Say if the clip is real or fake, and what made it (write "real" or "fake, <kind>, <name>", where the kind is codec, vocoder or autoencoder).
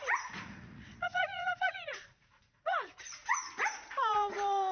fake, vocoder, Vocos